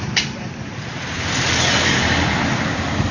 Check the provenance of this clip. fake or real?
real